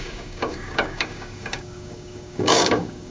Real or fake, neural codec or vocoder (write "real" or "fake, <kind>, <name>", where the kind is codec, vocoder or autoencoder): fake, codec, DAC